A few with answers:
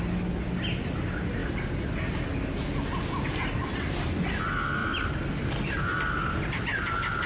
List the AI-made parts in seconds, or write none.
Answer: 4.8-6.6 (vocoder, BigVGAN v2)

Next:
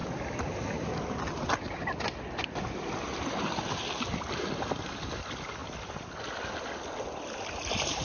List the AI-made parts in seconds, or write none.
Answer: none

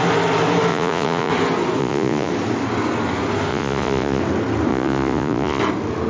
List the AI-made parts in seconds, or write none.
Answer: 0.7-1.3 (vocoder, Vocos); 1.8-2.3; 3.5-4.2; 4.7-5.6

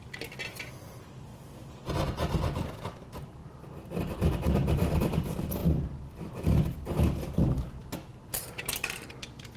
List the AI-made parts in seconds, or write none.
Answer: none

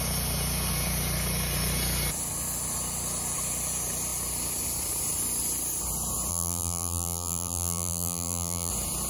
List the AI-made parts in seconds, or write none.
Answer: 6.3-8.7 (vocoder, BigVGAN v2)

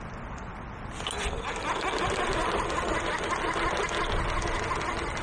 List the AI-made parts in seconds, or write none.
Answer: none